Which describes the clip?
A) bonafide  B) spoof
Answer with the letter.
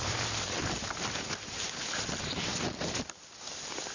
A